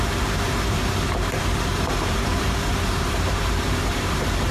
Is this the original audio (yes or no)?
no